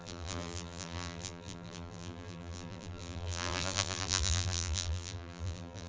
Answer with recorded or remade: remade